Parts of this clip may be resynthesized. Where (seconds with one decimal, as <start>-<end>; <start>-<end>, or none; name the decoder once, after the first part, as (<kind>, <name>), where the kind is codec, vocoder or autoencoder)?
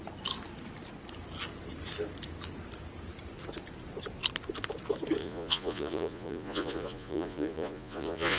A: 5.2-8.4 (vocoder, Vocos)